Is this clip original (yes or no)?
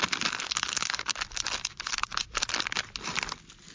yes